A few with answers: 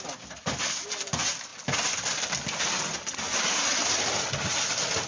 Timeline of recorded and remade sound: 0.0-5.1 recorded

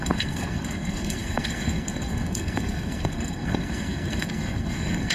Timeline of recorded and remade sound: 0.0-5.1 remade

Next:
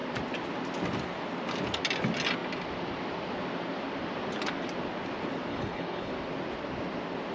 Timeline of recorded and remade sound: 0.0-5.5 recorded; 5.5-6.1 remade; 6.1-7.3 recorded

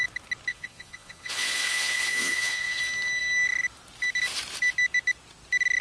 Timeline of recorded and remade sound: 0.0-0.5 recorded; 0.5-2.8 remade; 2.8-5.8 recorded

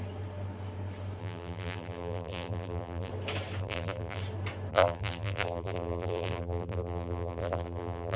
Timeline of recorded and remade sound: 0.0-1.2 recorded; 1.2-3.1 remade; 3.1-3.6 recorded; 3.6-4.2 remade; 4.2-4.7 recorded; 4.7-8.2 remade

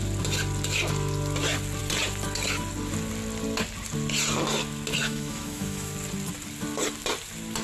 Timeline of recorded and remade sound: 0.0-5.0 recorded; 5.0-5.9 remade; 5.9-7.6 recorded

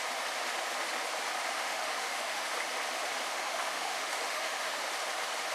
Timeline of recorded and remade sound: 0.0-1.5 recorded; 1.5-2.5 remade; 2.5-3.3 recorded; 3.3-4.9 remade; 4.9-5.5 recorded